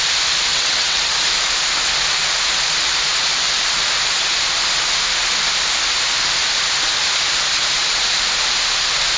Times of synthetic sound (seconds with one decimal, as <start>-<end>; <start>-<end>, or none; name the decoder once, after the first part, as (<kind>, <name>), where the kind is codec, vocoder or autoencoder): 0.5-1.1 (vocoder, WaveNeXt)